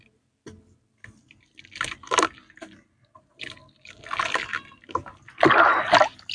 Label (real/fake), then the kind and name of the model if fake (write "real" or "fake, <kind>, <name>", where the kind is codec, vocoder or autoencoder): real